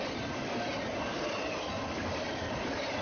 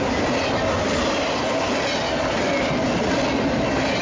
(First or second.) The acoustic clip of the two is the second